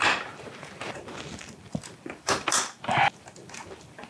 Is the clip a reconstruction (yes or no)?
yes